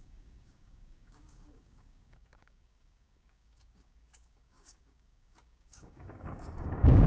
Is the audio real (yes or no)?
no